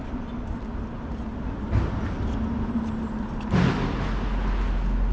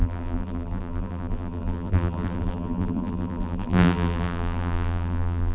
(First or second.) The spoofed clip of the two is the second